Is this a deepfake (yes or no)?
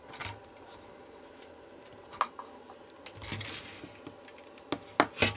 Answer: no